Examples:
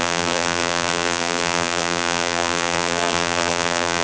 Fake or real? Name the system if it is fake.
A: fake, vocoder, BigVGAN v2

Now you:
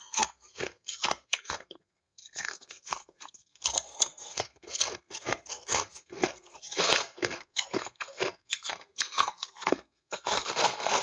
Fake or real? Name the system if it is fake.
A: fake, codec, SNAC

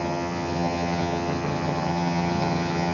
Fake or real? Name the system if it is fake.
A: fake, vocoder, HiFi-GAN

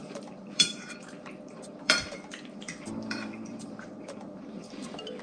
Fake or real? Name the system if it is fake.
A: fake, vocoder, BigVGAN v2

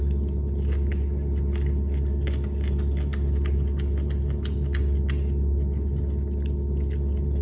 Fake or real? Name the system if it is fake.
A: real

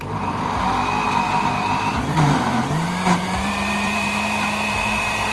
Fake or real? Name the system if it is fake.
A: fake, vocoder, BigVGAN v2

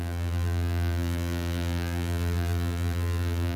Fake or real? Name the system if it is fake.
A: fake, vocoder, BigVGAN v2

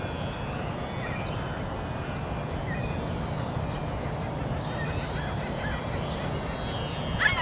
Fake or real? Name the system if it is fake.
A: real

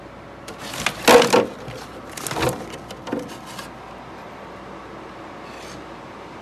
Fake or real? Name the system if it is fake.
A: real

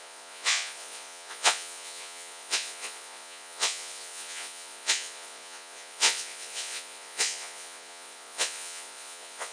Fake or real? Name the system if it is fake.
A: fake, vocoder, Vocos